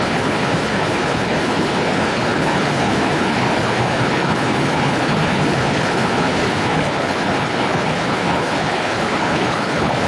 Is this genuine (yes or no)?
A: no